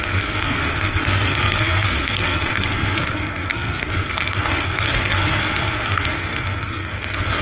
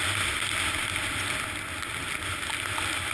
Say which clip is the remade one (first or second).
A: first